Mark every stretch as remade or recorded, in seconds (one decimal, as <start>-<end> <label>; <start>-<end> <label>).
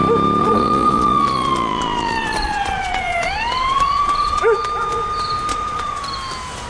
0.0-0.4 recorded; 0.4-4.4 remade; 4.4-5.5 recorded; 5.5-6.0 remade; 6.0-6.7 recorded